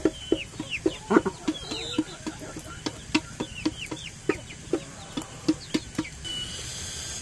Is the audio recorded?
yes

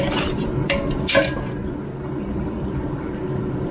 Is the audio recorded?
no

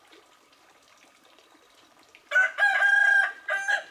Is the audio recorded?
yes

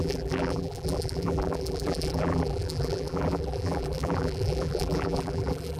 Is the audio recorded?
no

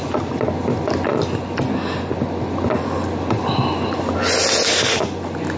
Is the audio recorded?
yes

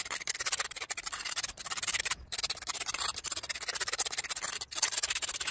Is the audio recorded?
no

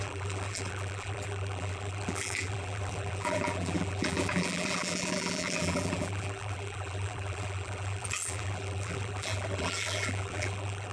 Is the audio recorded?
no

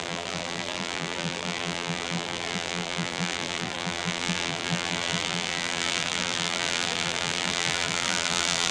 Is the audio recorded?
no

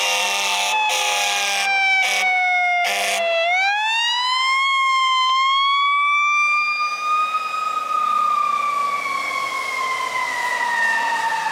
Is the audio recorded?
yes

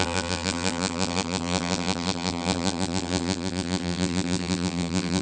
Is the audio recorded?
no